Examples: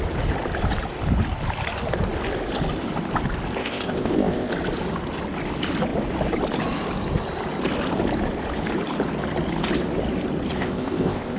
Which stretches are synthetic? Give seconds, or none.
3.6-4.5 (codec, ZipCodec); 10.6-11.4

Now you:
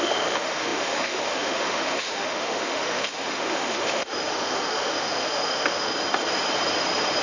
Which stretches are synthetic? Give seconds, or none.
0.0-5.9 (autoencoder, DAC-VAE)

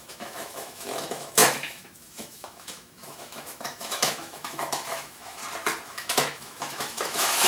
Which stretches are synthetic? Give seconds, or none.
0.0-5.4 (autoencoder, DAC-VAE); 5.9-7.5

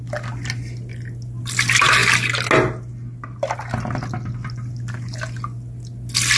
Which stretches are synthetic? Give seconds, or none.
none

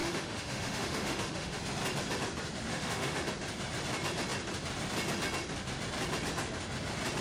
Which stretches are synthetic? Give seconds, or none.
0.0-1.6 (autoencoder, DAC-VAE); 2.7-3.3

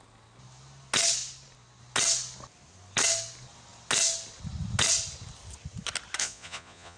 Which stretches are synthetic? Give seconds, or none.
6.2-7.0 (vocoder, Vocos)